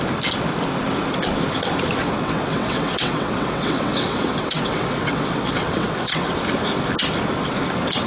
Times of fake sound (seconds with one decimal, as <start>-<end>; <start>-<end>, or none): 2.0-6.3